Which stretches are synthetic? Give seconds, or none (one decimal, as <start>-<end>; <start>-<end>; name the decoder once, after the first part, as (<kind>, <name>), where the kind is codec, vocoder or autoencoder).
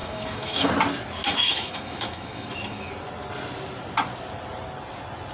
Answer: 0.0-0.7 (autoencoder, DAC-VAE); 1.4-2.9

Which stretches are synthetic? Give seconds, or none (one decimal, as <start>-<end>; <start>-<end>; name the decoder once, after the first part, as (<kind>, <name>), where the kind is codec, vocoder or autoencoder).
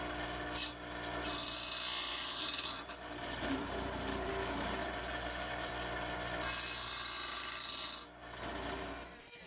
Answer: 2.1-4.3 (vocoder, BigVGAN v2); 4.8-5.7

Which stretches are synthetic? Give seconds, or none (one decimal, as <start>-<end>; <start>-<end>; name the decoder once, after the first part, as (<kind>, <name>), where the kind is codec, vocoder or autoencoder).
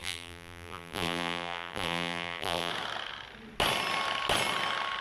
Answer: 0.0-2.7 (vocoder, BigVGAN v2)